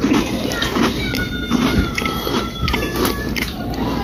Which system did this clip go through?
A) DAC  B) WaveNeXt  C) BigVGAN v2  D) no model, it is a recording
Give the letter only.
C